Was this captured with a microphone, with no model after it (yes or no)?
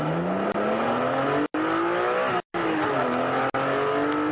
yes